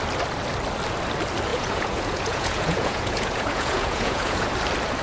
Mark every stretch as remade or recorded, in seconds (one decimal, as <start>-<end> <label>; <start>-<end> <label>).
0.0-1.5 recorded; 1.5-4.5 remade; 4.5-5.0 recorded